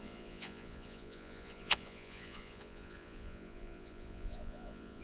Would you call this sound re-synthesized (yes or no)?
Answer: yes